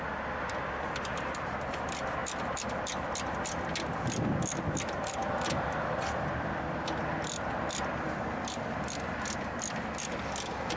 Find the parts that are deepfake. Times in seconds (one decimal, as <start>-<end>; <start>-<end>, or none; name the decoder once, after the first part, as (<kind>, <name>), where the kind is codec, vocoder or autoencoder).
none